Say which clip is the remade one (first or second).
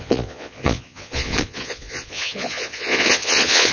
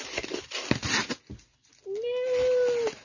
first